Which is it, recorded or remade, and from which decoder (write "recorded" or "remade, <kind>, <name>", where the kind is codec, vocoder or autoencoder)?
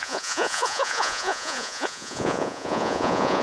remade, vocoder, Vocos